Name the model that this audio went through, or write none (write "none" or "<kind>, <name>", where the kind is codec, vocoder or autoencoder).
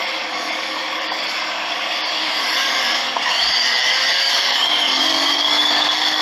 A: codec, DAC